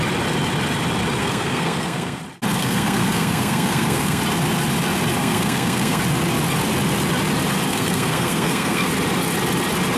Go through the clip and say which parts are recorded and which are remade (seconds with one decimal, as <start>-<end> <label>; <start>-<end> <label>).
0.0-1.2 recorded; 1.2-2.2 remade; 2.2-2.6 recorded; 2.6-4.2 remade; 4.2-5.2 recorded; 5.2-6.0 remade; 6.0-7.7 recorded; 7.7-8.9 remade; 8.9-10.0 recorded